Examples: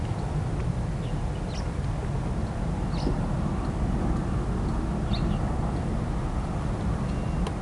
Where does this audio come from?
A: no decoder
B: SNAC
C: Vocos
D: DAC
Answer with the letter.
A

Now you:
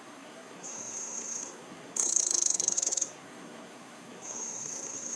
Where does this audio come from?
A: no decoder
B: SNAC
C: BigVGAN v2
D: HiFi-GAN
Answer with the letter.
B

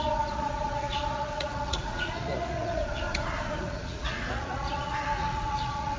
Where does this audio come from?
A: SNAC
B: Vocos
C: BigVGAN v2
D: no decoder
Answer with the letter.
B